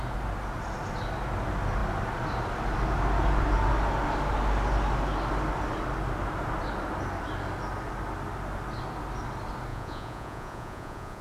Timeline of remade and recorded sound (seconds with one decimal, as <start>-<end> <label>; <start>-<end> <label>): 0.0-9.7 recorded; 9.7-11.2 remade